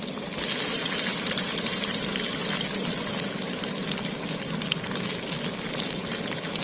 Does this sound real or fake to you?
real